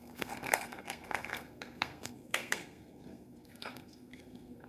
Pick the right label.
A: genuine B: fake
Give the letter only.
B